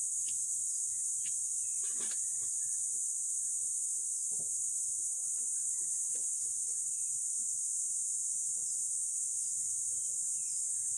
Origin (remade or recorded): recorded